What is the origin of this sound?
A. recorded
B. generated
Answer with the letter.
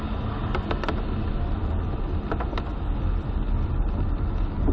A